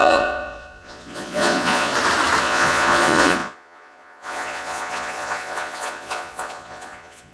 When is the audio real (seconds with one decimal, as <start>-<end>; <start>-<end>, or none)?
1.9-2.4